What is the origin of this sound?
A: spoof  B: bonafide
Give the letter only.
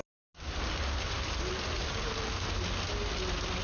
B